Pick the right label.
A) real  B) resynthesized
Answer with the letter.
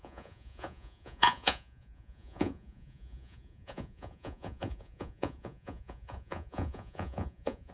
B